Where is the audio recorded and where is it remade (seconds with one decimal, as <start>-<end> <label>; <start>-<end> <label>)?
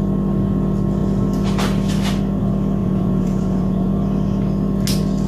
0.0-2.8 recorded; 2.8-3.9 remade; 3.9-5.3 recorded